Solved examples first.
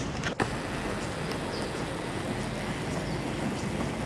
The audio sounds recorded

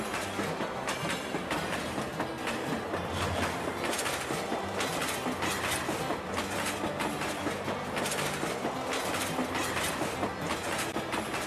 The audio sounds recorded